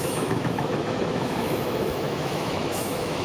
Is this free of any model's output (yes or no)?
no